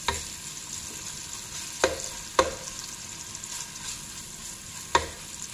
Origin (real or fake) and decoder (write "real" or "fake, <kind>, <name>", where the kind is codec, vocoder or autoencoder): real